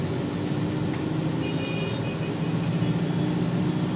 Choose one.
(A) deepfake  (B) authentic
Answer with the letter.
B